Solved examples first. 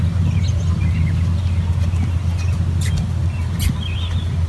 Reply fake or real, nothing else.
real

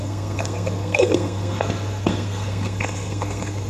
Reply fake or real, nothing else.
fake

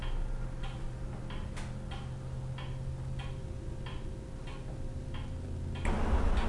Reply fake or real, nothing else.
real